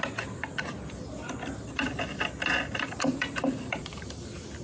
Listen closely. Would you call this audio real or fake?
real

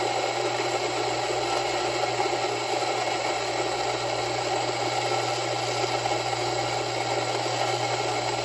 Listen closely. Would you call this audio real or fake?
real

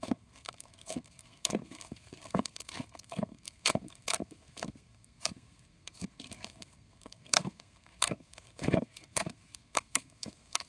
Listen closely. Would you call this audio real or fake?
fake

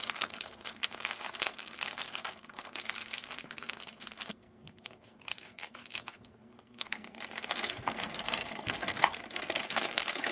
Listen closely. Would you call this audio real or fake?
fake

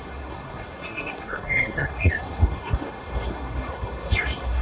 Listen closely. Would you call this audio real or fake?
fake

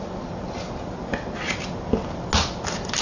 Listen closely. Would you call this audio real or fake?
real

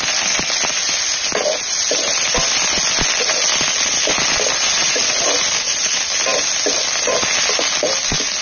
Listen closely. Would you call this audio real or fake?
real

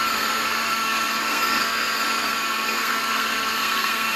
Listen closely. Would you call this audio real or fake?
fake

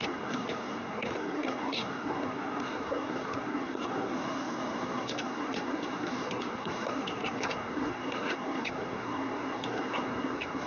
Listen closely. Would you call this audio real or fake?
fake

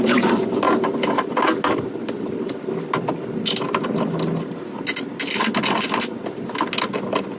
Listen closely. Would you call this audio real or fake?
real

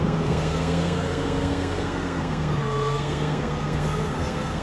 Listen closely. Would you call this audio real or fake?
fake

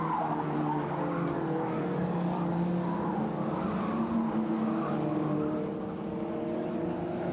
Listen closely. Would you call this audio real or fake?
real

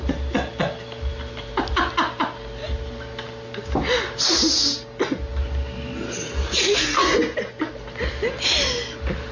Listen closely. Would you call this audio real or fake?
real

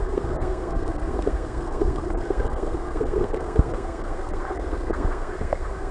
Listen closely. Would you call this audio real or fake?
fake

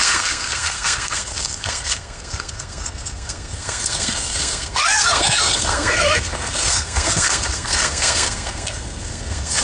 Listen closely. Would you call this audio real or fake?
fake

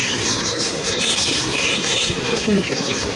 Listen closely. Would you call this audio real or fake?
fake